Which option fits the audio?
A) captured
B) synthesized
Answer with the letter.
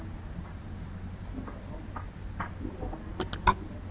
A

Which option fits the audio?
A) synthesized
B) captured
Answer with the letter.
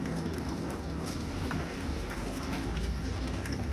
A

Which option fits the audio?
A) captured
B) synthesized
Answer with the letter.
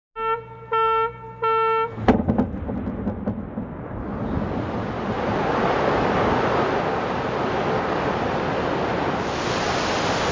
A